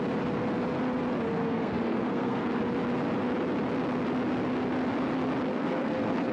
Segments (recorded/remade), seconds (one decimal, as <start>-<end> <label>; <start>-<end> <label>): 0.0-1.4 recorded; 1.4-2.6 remade; 2.6-5.5 recorded; 5.5-6.3 remade